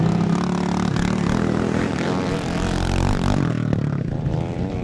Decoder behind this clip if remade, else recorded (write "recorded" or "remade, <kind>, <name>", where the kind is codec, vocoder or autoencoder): recorded